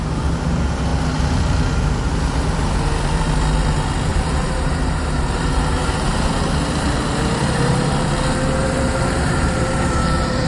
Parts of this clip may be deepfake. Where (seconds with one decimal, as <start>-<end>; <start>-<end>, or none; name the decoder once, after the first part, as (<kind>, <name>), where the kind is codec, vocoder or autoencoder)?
4.1-7.9 (vocoder, BigVGAN v2); 8.6-10.5